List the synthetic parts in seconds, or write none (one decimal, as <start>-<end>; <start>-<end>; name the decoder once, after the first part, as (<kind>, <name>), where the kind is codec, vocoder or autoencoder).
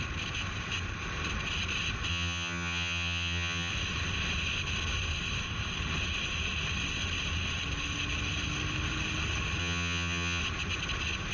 2.1-3.7 (vocoder, HiFi-GAN); 9.6-10.4